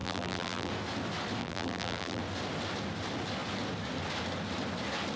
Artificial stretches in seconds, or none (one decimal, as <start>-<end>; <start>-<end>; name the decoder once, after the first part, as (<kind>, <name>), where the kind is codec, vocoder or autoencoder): 0.0-0.7 (vocoder, BigVGAN v2); 1.4-2.2